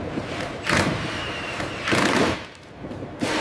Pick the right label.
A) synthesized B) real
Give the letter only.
A